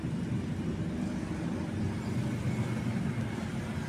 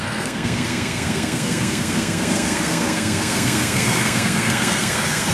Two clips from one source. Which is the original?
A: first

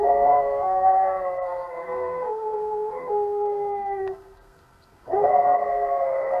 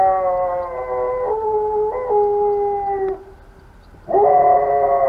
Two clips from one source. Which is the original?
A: second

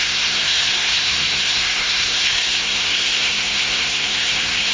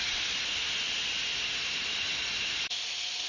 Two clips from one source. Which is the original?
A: second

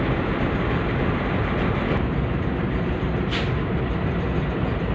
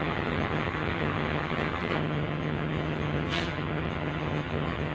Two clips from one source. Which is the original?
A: first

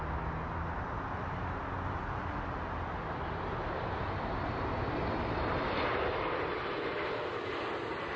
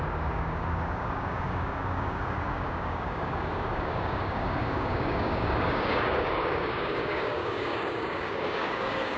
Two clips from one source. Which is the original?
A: first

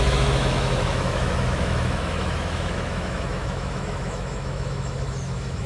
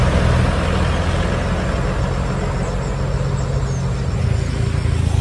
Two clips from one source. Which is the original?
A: second